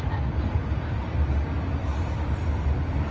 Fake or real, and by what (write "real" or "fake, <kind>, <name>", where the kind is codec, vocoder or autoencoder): real